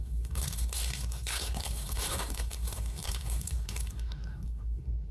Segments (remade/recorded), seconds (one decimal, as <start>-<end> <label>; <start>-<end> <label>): 0.0-5.1 remade